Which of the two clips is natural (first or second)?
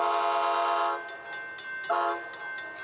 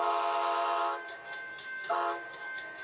first